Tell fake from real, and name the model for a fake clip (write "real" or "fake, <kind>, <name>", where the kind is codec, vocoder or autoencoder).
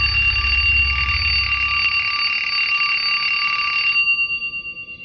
real